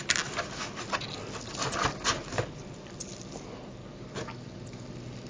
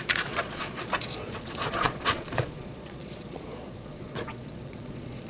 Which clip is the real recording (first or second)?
first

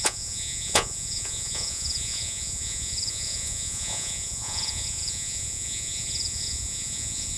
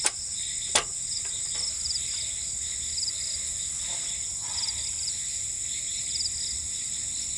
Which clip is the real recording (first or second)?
second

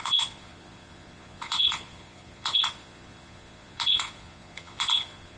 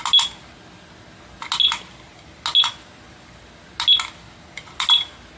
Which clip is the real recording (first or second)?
second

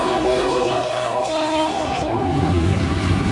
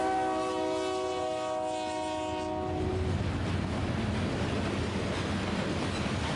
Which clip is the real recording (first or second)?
second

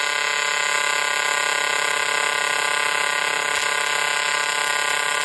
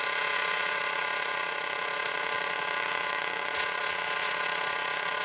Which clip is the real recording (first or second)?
first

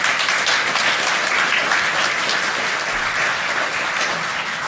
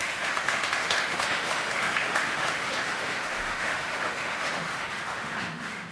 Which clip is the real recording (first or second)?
first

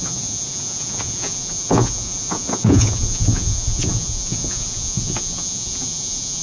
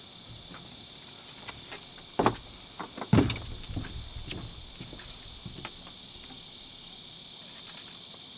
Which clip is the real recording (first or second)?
second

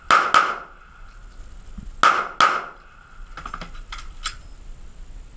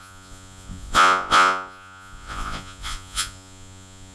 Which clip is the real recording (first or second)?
first